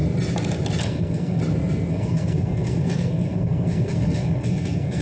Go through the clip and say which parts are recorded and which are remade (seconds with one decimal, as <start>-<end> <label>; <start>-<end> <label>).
0.0-0.8 recorded; 0.8-1.4 remade; 1.4-1.9 recorded; 1.9-5.0 remade